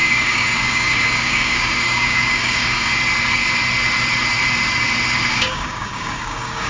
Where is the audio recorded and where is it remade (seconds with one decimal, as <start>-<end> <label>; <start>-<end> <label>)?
0.0-2.9 remade; 2.9-5.3 recorded; 5.3-6.7 remade